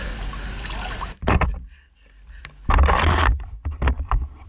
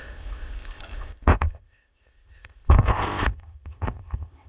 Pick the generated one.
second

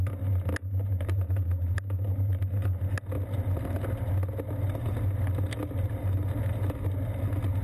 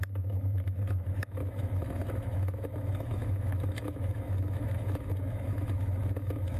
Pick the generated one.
second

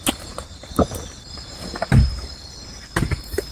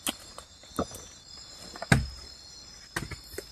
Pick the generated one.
first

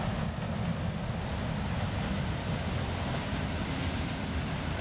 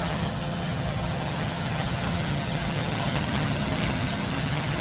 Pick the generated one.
second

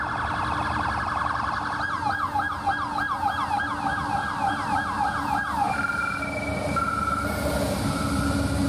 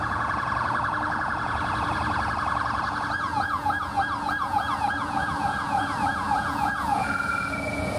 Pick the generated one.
second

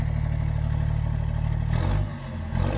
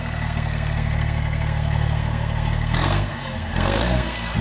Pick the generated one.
second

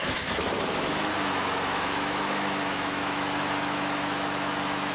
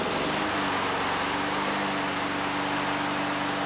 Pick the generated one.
first